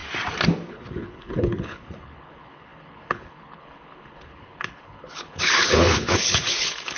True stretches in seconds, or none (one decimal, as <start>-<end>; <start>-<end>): 0.0-0.7